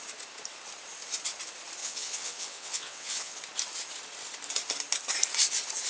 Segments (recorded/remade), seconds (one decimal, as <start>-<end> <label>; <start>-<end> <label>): 0.0-1.8 recorded; 1.8-3.4 remade; 3.4-5.9 recorded